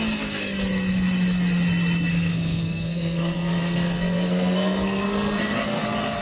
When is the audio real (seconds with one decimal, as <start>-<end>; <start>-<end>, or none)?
0.0-2.1; 5.8-6.2